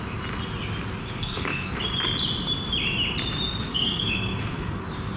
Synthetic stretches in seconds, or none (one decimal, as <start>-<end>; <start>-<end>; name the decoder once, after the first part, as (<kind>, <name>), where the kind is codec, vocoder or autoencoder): 1.0-1.8 (codec, SNAC); 3.7-4.8

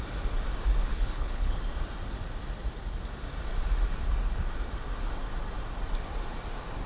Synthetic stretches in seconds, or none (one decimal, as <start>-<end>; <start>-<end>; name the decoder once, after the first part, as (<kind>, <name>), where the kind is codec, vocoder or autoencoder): 0.9-1.6 (codec, HILCodec)

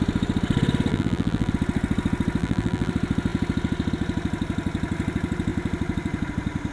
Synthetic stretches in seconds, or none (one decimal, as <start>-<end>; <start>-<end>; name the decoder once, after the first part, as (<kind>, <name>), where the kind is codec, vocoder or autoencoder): 0.9-1.5 (vocoder, BigVGAN v2); 2.4-2.9

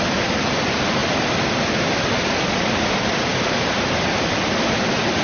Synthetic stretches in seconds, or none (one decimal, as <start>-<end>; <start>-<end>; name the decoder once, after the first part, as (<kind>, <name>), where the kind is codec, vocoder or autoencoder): 0.0-1.0 (vocoder, BigVGAN v2); 2.7-5.2